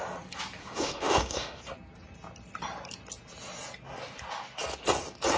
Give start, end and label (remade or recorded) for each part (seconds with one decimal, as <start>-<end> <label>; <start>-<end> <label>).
0.0-0.6 recorded; 0.6-1.6 remade; 1.6-5.4 recorded